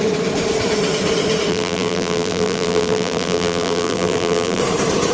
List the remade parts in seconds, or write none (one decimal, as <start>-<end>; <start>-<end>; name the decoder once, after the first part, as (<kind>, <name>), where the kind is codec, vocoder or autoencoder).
1.5-4.6 (vocoder, BigVGAN v2)